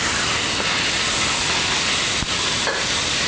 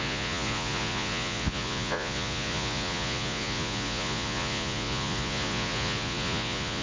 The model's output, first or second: second